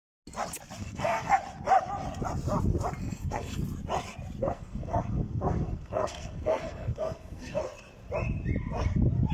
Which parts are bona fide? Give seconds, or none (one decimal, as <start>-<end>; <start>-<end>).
0.0-0.8; 1.4-3.0; 3.6-4.4; 7.6-9.3